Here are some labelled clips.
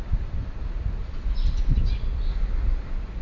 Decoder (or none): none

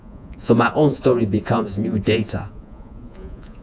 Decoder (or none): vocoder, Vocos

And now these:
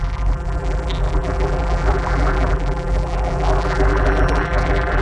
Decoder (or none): vocoder, BigVGAN v2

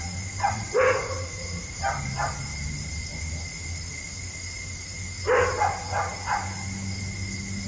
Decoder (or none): none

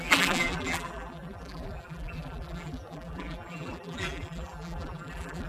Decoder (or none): vocoder, BigVGAN v2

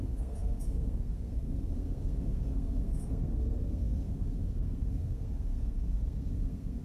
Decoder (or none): codec, SNAC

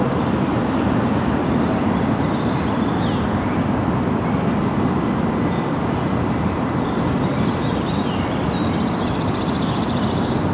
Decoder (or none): vocoder, BigVGAN v2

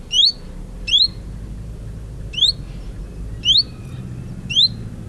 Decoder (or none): none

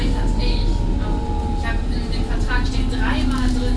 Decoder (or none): none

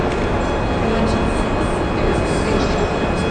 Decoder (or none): none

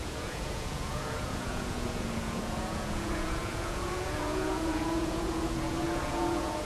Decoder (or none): vocoder, Vocos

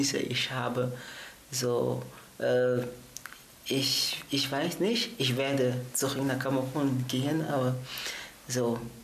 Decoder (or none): none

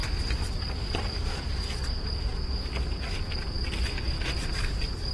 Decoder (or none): none